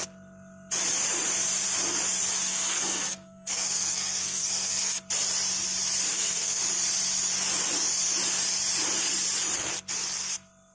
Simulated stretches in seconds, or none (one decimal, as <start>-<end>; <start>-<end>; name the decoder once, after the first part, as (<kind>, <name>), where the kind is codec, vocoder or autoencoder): 2.5-5.0 (codec, SNAC); 6.1-6.6